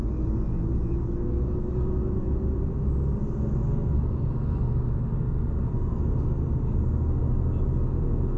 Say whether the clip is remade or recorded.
recorded